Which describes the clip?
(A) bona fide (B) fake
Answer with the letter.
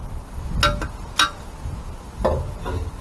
A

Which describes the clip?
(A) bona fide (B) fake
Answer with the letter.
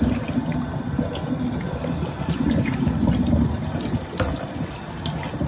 A